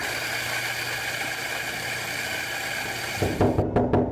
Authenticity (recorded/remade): recorded